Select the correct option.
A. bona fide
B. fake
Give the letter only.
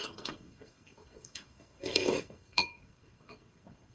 B